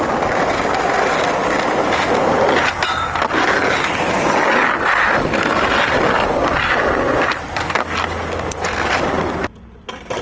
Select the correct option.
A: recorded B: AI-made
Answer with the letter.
A